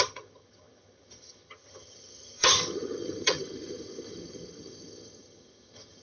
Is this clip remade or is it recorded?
remade